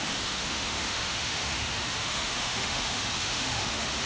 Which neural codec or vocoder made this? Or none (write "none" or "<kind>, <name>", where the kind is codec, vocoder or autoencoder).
autoencoder, DAC-VAE